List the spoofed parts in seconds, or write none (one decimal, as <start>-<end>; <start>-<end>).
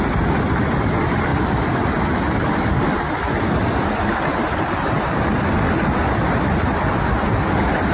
none